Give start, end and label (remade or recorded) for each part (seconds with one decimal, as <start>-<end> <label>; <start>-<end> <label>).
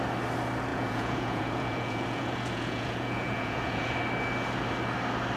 0.0-0.7 recorded; 0.7-3.9 remade; 3.9-5.4 recorded